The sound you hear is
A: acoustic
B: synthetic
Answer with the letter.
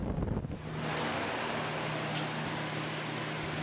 A